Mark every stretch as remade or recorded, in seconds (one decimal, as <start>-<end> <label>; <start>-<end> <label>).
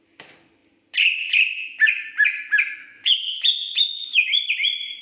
0.0-2.8 recorded; 2.8-4.5 remade; 4.5-5.0 recorded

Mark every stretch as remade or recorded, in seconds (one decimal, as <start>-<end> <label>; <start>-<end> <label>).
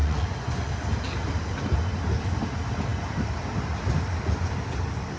0.0-0.7 remade; 0.7-5.2 recorded